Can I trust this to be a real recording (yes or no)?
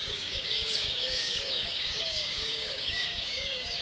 no